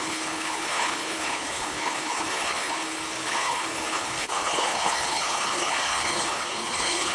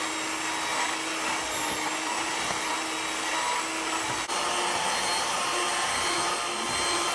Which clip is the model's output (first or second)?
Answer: first